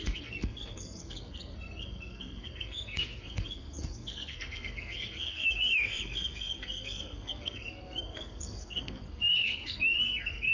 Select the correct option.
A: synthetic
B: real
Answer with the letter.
A